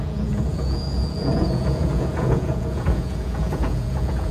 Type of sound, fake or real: fake